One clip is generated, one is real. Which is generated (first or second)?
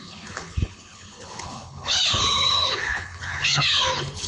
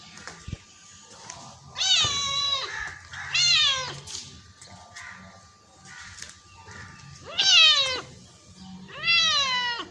first